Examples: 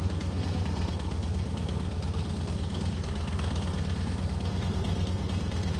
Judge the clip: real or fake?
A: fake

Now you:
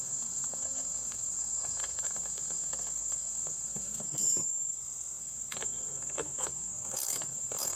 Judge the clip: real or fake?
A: fake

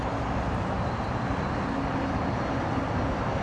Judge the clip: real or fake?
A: real